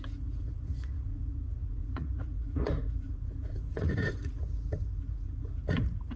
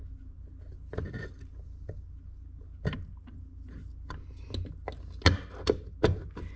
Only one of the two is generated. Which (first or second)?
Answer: first